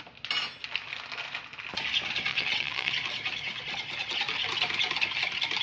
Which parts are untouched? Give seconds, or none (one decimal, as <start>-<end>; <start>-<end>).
0.0-2.3; 2.9-5.6